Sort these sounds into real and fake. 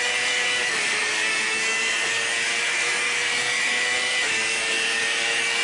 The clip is fake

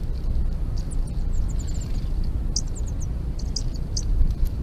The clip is real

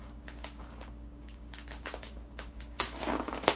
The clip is fake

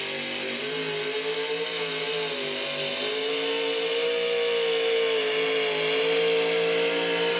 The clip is real